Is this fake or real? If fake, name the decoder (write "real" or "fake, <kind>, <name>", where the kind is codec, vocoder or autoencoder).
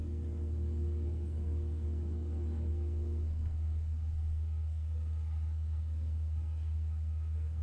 fake, codec, SNAC